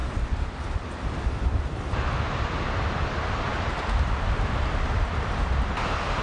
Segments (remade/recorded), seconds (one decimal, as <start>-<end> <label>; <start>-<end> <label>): 0.0-6.2 recorded